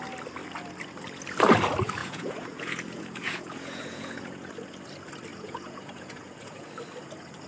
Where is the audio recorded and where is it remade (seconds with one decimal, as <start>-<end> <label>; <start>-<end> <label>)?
0.0-2.0 recorded; 2.0-4.5 remade; 4.5-5.3 recorded; 5.3-6.7 remade; 6.7-7.5 recorded